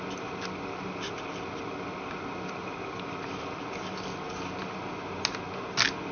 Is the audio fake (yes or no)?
no